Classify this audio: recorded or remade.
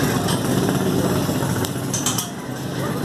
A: recorded